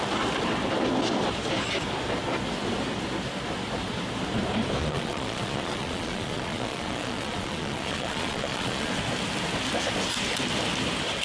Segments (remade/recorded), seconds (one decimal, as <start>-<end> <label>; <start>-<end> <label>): 0.0-4.8 recorded; 4.8-8.9 remade; 8.9-11.2 recorded